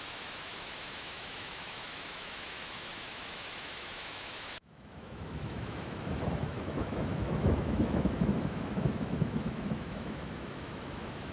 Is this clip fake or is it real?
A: fake